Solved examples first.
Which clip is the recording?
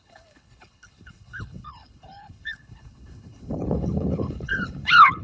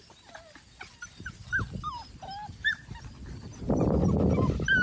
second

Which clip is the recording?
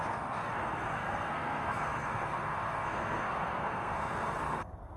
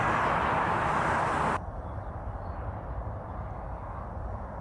second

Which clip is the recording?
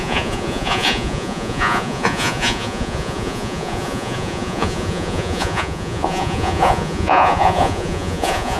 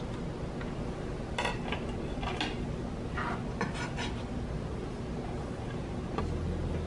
second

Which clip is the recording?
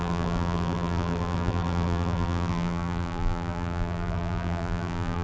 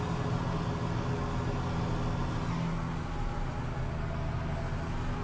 second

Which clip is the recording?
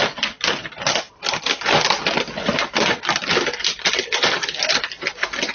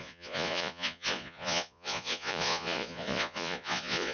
first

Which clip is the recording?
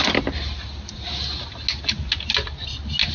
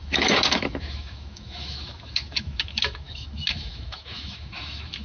first